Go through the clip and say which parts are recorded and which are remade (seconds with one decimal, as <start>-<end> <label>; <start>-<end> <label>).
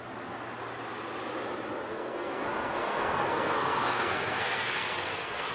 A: 0.0-1.9 recorded; 1.9-5.5 remade